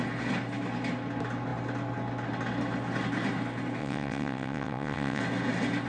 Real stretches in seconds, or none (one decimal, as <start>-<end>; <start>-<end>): 0.0-3.8; 5.2-5.9